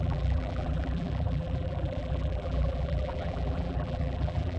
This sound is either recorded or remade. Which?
remade